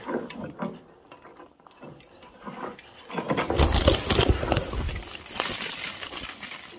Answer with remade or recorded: recorded